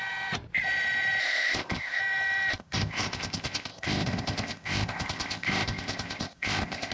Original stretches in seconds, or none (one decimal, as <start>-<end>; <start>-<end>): 0.0-1.2; 2.0-2.5